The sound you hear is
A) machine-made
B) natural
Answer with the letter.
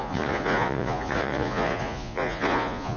A